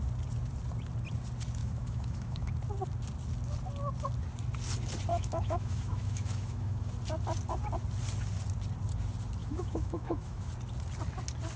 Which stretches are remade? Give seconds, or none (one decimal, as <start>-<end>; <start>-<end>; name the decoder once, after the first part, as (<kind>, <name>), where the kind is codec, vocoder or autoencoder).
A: 1.6-2.5 (autoencoder, DAC-VAE); 5.1-6.9; 9.4-10.5